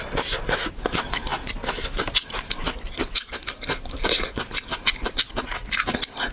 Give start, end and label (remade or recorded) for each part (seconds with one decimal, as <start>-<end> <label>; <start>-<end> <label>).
0.0-6.3 recorded